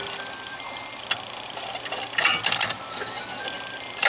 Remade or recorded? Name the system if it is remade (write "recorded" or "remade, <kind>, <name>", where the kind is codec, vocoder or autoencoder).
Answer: recorded